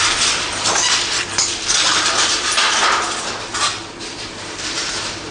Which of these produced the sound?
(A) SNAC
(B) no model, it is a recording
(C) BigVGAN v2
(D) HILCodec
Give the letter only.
C